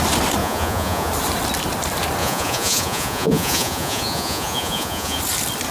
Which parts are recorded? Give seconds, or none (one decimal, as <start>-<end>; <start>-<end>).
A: 0.0-0.4; 1.1-2.2; 5.2-5.7